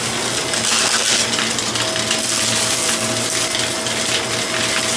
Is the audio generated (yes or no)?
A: no